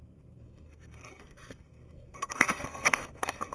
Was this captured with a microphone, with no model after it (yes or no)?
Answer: no